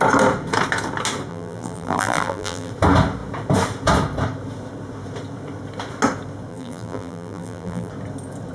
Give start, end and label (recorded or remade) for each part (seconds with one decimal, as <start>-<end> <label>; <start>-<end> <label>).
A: 0.0-1.3 recorded; 1.3-2.7 remade; 2.7-6.5 recorded; 6.5-7.9 remade; 7.9-8.5 recorded